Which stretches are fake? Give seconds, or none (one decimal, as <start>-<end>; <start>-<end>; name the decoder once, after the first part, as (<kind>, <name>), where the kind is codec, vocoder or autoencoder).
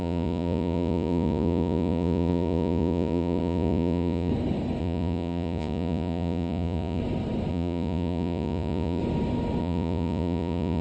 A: 0.0-4.3 (vocoder, Vocos); 4.8-7.0; 7.5-9.0; 9.6-10.8